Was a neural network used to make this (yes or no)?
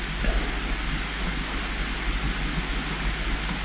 no